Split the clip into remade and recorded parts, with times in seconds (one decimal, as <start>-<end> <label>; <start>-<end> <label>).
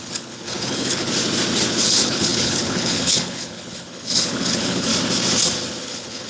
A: 0.0-1.1 remade; 1.1-1.8 recorded; 1.8-4.9 remade; 4.9-5.8 recorded; 5.8-6.3 remade